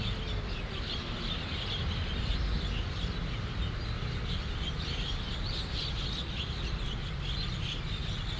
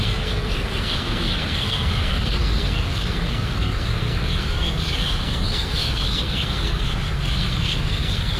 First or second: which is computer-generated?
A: second